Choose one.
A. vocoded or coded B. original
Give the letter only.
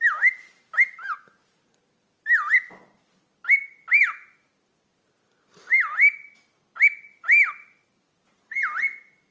B